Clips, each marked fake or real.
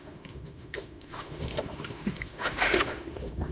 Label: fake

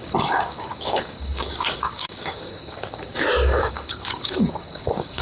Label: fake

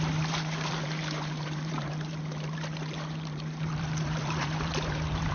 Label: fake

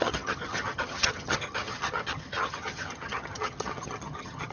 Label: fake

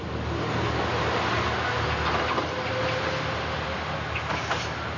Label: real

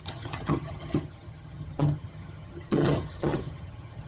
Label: fake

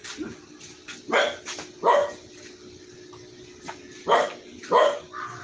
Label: real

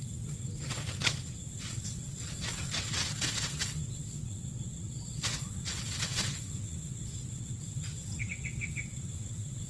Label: fake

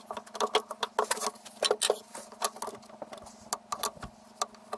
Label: real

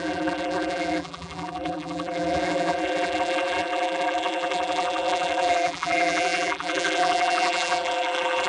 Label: fake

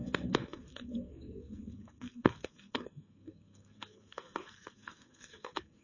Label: fake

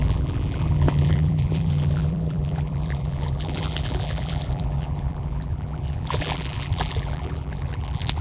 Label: fake